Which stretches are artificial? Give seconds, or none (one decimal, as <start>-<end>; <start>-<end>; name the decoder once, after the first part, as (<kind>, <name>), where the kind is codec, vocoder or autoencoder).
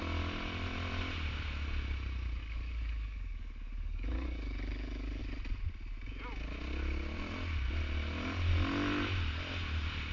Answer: 2.4-5.2 (codec, DAC)